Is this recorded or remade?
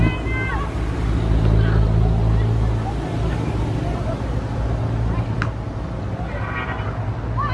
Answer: recorded